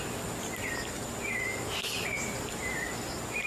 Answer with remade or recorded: recorded